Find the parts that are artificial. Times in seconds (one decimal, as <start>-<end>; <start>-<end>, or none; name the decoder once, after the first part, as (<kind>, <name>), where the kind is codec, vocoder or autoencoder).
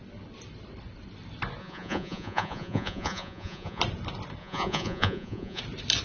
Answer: 1.6-3.8 (vocoder, Vocos); 4.4-5.6